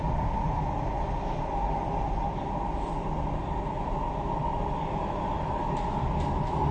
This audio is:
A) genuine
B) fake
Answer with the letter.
A